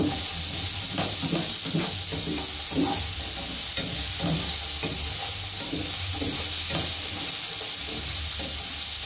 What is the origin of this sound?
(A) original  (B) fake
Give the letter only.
A